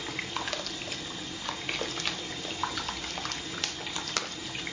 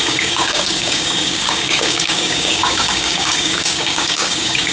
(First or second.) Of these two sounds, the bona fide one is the first